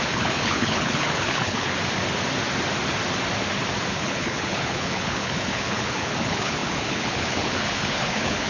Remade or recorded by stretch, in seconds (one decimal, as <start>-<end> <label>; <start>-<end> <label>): 0.0-1.7 remade; 1.7-3.9 recorded; 3.9-8.5 remade